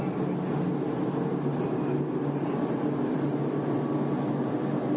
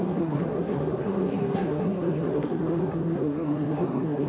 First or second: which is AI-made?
second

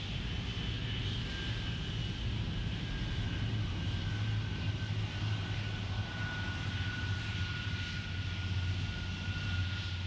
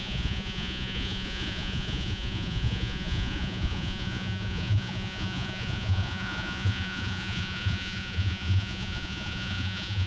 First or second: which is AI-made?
second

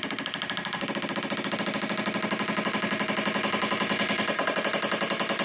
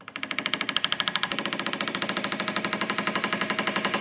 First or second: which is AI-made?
second